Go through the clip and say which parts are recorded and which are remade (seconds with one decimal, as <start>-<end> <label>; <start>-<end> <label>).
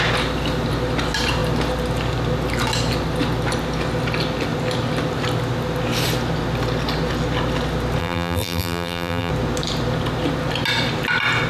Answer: 0.0-8.0 recorded; 8.0-9.3 remade; 9.3-11.5 recorded